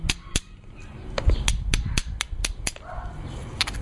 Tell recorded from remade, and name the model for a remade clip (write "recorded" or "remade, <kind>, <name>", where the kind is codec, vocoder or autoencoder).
recorded